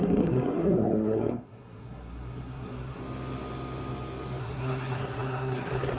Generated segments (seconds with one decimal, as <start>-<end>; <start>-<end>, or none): 0.0-3.0; 4.4-6.0